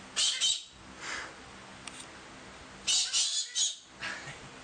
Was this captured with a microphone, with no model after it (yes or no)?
yes